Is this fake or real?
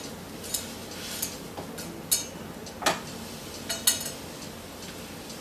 real